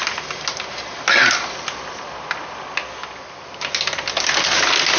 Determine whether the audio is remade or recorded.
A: recorded